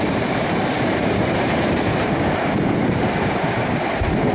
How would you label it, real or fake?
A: fake